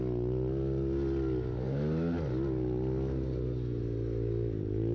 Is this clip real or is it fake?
real